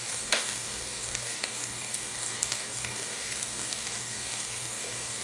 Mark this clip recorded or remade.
remade